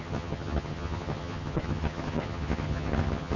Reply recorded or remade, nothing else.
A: remade